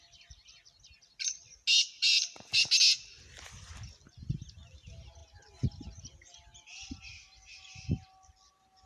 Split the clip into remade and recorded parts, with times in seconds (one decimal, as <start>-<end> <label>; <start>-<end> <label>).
0.0-8.9 recorded